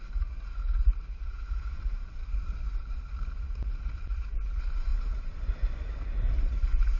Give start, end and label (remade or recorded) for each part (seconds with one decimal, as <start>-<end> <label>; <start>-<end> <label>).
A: 0.0-1.3 recorded; 1.3-2.6 remade; 2.6-4.9 recorded; 4.9-5.5 remade; 5.5-7.0 recorded